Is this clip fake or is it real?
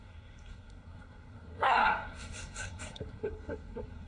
fake